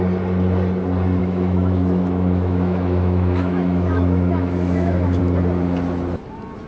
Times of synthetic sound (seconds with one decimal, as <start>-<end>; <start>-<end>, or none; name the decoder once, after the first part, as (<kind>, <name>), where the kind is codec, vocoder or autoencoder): 1.2-5.2 (autoencoder, DAC-VAE)